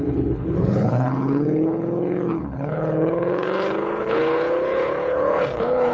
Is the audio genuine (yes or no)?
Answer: no